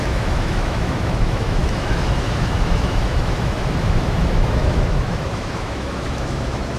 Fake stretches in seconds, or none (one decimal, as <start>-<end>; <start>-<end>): 0.0-6.8